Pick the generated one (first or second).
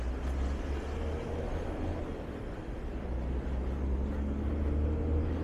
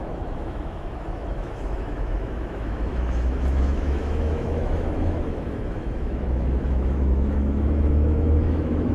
second